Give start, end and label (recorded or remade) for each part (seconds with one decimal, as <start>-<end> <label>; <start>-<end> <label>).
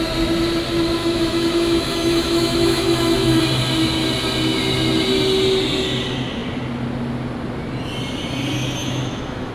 0.0-1.0 recorded; 1.0-3.4 remade; 3.4-8.8 recorded; 8.8-9.5 remade